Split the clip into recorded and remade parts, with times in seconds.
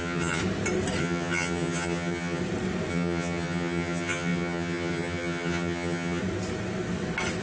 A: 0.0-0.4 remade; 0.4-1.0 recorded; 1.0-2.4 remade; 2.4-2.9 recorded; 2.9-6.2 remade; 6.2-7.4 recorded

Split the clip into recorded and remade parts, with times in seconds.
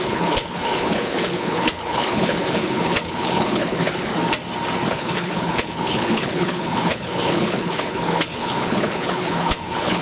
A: 0.0-4.1 remade; 4.1-4.9 recorded; 4.9-10.0 remade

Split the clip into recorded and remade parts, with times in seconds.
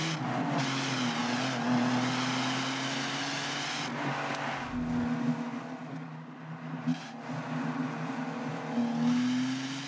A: 0.0-9.9 recorded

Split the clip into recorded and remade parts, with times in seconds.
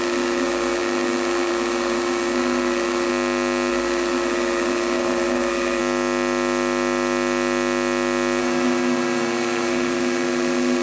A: 0.0-3.1 remade; 3.1-3.7 recorded; 3.7-5.8 remade; 5.8-8.4 recorded; 8.4-10.8 remade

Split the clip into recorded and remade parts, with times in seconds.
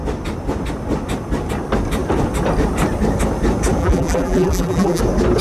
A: 0.0-3.8 recorded; 3.8-5.0 remade; 5.0-5.4 recorded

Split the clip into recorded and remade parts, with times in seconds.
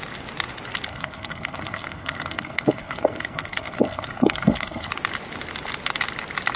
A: 0.0-0.9 recorded; 0.9-4.9 remade; 4.9-6.6 recorded